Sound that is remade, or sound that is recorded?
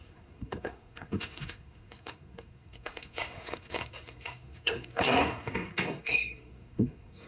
remade